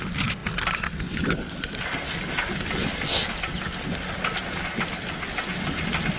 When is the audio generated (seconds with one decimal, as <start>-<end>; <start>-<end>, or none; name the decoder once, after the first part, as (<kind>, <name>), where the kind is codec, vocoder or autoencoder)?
none

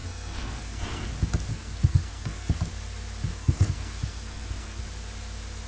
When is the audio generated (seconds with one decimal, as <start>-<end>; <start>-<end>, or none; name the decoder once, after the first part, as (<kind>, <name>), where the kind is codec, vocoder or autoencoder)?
0.0-1.1 (codec, SNAC); 1.5-2.6; 3.3-4.8

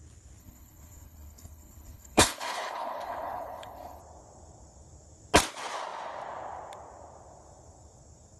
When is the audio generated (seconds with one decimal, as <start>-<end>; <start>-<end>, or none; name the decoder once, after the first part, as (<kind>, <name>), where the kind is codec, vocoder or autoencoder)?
0.4-4.0 (codec, HILCodec)

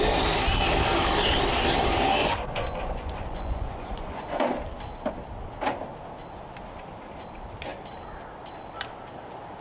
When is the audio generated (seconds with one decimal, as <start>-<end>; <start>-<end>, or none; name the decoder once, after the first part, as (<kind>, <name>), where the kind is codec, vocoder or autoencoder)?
2.2-4.4 (vocoder, Vocos)

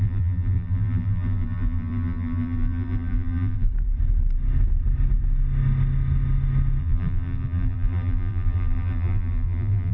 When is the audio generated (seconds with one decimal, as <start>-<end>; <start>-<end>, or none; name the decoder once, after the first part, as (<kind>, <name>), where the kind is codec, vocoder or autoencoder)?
0.0-3.7 (vocoder, BigVGAN v2); 6.8-9.9

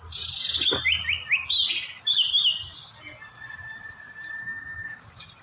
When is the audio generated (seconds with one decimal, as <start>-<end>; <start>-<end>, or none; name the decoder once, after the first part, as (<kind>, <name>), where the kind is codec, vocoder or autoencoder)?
4.4-5.0 (codec, DAC)

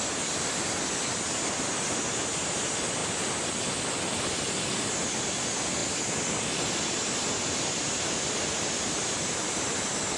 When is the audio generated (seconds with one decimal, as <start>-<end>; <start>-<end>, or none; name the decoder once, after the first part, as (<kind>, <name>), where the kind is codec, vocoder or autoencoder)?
none

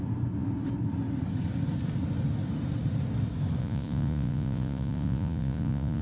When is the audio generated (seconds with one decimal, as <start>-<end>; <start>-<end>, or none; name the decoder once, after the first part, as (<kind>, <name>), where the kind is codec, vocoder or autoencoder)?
3.6-6.0 (vocoder, Vocos)